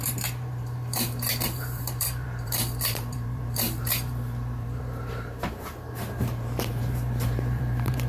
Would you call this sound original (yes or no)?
no